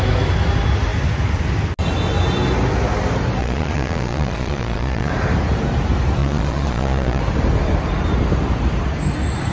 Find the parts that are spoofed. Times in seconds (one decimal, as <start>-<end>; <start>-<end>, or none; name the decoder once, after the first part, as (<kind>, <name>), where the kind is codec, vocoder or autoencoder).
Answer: 3.4-5.1 (vocoder, Vocos); 6.2-7.2

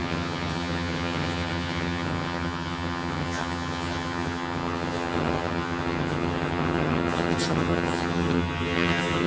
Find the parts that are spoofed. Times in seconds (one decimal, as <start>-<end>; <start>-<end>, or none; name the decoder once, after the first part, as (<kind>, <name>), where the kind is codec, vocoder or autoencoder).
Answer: 0.0-9.3 (vocoder, HiFi-GAN)

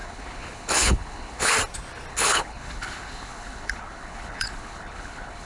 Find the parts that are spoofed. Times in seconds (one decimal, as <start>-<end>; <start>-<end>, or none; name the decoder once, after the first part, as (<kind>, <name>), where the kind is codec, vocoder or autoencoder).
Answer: 0.0-1.5 (codec, HILCodec); 2.1-5.5

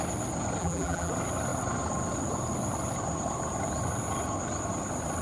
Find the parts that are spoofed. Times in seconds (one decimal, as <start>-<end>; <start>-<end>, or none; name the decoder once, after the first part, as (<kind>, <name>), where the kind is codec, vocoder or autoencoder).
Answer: 0.6-1.1 (vocoder, BigVGAN v2)

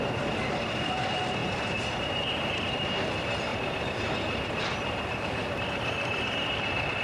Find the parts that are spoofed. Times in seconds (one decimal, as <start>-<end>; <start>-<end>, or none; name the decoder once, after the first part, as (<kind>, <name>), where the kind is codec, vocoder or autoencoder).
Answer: 3.5-7.0 (vocoder, BigVGAN v2)

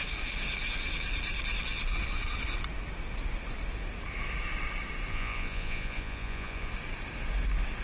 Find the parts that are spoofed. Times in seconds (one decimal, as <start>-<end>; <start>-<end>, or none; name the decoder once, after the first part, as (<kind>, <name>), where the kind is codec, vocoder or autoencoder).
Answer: 5.1-6.7 (vocoder, Vocos)

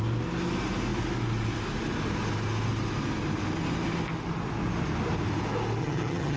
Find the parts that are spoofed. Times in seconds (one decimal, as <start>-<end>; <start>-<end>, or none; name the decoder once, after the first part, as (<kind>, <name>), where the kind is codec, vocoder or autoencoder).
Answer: 5.8-6.4 (vocoder, HiFi-GAN)